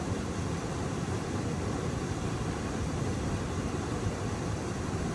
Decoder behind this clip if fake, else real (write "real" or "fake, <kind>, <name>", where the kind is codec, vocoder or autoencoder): fake, vocoder, BigVGAN v2